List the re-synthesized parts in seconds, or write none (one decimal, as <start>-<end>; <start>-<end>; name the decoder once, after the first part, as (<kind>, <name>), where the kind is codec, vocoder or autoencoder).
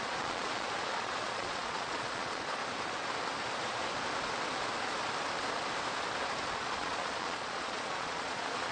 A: 0.0-2.6 (vocoder, Vocos); 6.5-8.7